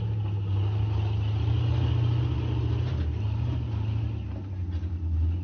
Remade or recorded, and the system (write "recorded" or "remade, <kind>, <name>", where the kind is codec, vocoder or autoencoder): recorded